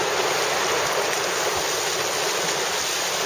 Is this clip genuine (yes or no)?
yes